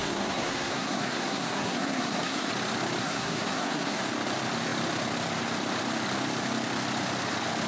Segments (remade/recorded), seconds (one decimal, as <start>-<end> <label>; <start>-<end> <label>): 0.0-2.5 remade; 2.5-3.0 recorded; 3.0-4.0 remade; 4.0-7.7 recorded